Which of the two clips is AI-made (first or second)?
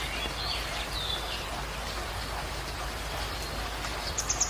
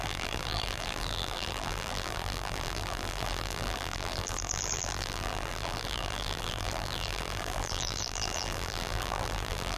second